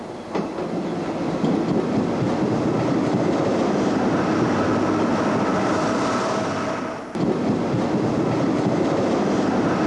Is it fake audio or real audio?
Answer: real